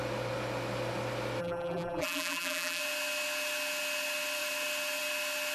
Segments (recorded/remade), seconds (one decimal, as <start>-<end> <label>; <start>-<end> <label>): 0.0-1.4 recorded; 1.4-2.8 remade; 2.8-5.5 recorded